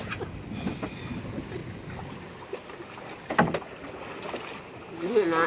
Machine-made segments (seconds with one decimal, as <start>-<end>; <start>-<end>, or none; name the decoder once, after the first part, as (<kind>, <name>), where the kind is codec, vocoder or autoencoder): none